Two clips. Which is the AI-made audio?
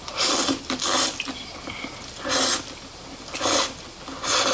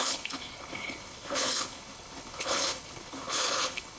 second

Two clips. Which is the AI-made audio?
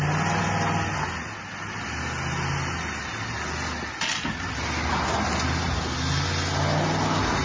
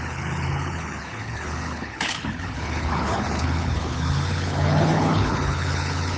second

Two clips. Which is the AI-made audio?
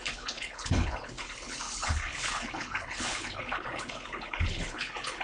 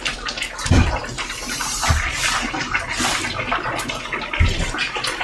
first